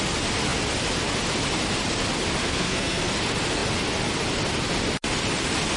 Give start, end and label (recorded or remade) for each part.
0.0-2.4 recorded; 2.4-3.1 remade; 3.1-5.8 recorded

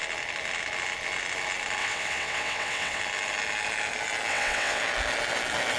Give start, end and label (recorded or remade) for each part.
0.0-1.8 recorded; 1.8-3.0 remade; 3.0-4.3 recorded; 4.3-4.8 remade; 4.8-5.8 recorded

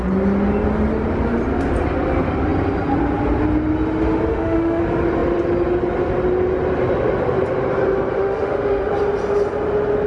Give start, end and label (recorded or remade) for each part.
0.0-4.3 recorded; 4.3-4.8 remade; 4.8-8.2 recorded; 8.2-8.9 remade; 8.9-10.1 recorded

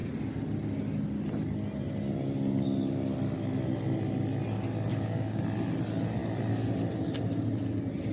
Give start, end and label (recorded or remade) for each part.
0.0-4.9 recorded; 4.9-5.4 remade; 5.4-8.1 recorded

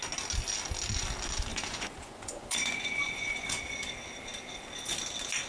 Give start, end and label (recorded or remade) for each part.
0.0-1.5 recorded; 1.5-3.6 remade; 3.6-5.5 recorded

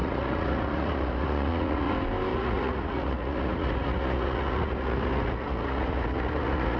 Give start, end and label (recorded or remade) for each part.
0.0-1.9 remade; 1.9-2.3 recorded; 2.3-6.8 remade